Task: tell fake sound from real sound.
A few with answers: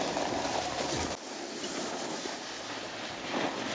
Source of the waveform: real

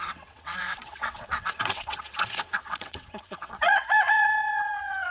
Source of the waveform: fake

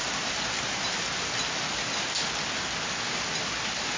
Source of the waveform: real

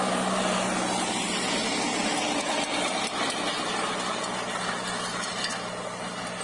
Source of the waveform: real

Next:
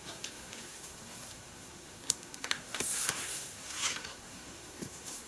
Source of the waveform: fake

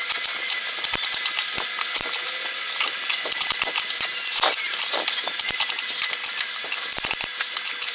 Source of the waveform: real